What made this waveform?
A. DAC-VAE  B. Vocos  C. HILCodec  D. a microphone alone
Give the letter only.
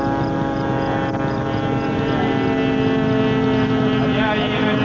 D